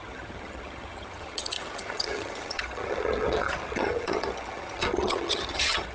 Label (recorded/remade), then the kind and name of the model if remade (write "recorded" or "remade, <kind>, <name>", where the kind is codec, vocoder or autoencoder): remade, vocoder, HiFi-GAN